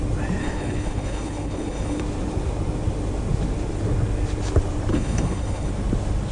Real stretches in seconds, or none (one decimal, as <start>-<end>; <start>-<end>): 0.0-0.4; 2.0-4.9; 5.7-6.3